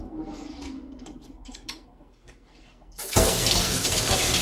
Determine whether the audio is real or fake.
fake